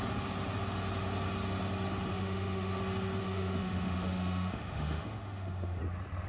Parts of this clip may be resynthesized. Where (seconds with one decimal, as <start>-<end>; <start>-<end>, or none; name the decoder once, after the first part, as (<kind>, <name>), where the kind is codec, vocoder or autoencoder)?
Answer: 2.1-2.8 (autoencoder, DAC-VAE); 3.2-5.8